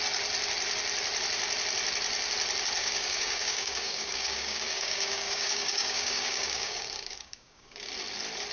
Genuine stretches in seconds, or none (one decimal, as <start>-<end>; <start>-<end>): 0.0-2.8; 7.9-8.5